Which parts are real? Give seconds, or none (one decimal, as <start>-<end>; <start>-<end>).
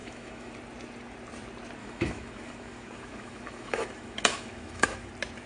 0.5-1.8; 5.1-5.5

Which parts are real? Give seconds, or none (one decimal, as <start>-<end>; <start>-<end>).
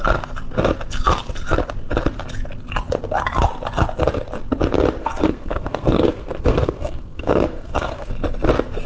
0.0-5.0; 8.1-8.9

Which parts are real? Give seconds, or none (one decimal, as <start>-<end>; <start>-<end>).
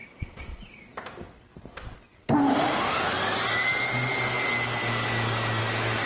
0.8-6.1